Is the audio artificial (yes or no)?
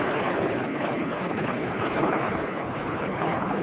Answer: yes